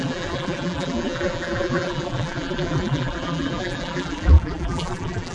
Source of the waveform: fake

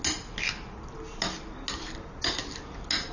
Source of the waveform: real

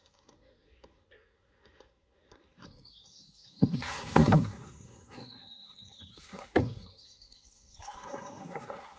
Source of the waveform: fake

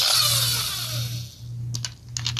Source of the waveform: real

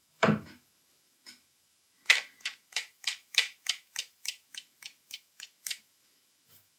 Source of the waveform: fake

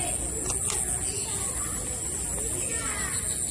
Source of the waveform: real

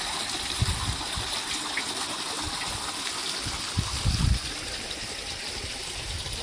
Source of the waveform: real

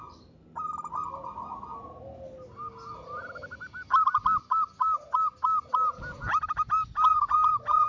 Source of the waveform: real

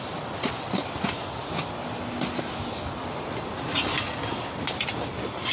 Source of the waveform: real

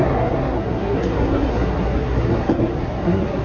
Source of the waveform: fake